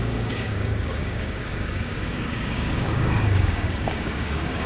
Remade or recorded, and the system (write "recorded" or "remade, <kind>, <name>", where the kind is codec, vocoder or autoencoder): remade, codec, DAC